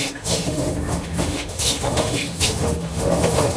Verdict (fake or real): fake